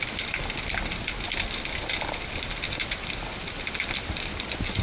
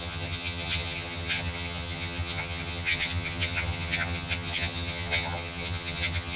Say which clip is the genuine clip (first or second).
first